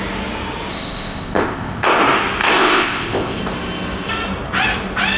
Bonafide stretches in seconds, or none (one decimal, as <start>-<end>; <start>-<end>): 0.0-0.7; 2.0-2.4; 3.4-5.2